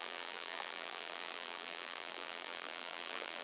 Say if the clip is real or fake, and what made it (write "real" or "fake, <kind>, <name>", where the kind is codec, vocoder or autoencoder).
fake, vocoder, BigVGAN v2